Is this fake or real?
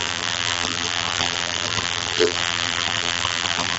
fake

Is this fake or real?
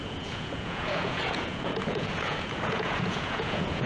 fake